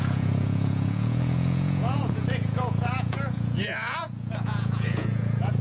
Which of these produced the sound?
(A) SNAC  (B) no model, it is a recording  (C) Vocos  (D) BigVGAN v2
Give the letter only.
C